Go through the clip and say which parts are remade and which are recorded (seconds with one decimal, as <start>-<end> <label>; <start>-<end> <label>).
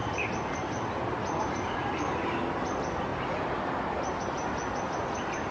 0.0-5.5 recorded